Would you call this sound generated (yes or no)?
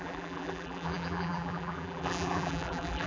yes